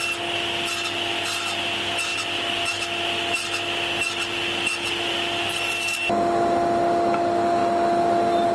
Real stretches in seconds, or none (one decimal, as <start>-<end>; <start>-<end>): 0.0-8.5